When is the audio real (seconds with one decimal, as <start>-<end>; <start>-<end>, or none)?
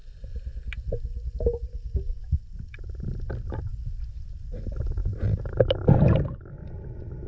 0.0-7.3